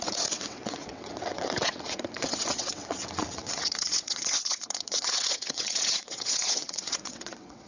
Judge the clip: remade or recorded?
remade